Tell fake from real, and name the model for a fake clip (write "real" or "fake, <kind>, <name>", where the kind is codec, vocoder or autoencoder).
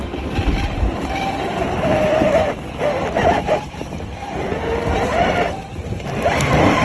fake, vocoder, BigVGAN v2